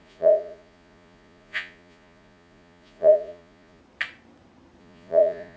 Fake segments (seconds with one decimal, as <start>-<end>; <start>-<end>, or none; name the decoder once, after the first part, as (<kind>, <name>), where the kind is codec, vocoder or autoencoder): 0.0-3.8 (vocoder, Vocos); 4.8-5.6